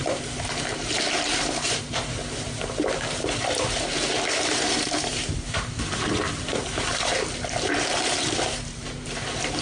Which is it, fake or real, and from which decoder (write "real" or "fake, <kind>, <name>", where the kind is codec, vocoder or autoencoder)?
fake, vocoder, BigVGAN v2